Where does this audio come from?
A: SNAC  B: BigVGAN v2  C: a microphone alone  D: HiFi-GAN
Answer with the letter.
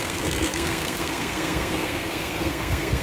A